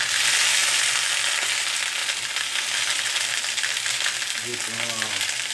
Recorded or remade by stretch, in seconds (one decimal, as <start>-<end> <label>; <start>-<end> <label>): 0.0-5.5 recorded